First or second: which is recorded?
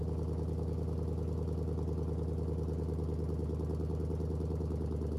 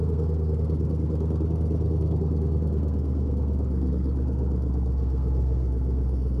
first